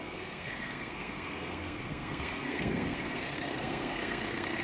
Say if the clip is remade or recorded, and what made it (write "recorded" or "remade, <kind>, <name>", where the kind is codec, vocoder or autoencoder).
remade, codec, SNAC